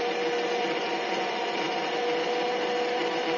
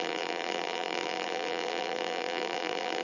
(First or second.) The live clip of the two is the first